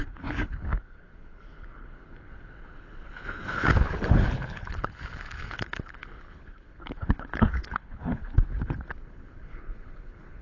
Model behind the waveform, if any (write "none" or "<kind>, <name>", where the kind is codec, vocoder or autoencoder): codec, HILCodec